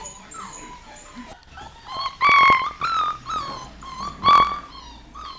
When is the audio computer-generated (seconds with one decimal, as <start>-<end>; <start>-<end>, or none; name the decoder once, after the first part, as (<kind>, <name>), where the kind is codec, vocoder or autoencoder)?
none